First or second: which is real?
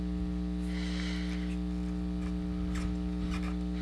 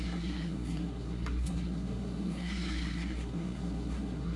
first